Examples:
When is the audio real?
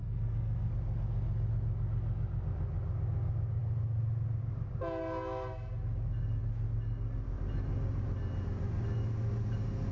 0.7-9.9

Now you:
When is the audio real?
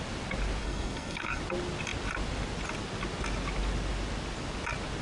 0.0-0.6; 1.4-5.0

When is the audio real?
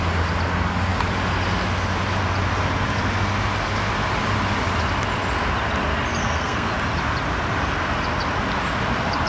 0.0-6.2; 6.7-9.3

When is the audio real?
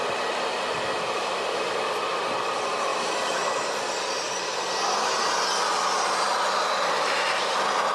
0.0-7.9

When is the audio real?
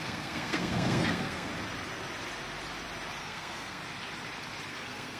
1.5-3.2; 3.8-4.7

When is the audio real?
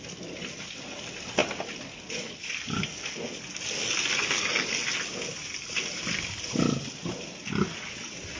0.0-8.4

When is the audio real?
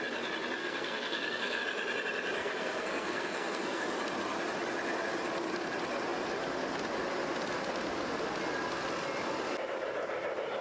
0.0-0.6; 1.6-2.4; 3.8-10.6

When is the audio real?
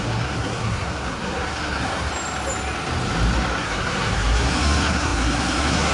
2.1-3.6